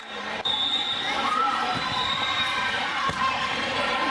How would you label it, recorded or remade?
remade